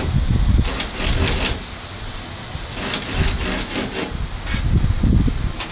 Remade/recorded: recorded